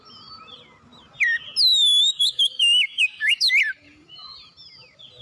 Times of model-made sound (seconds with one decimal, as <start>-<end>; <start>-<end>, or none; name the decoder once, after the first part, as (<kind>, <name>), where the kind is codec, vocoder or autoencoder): 1.7-3.5 (codec, DAC)